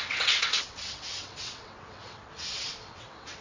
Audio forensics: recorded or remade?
remade